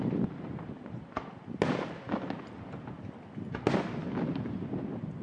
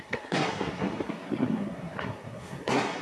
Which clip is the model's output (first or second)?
second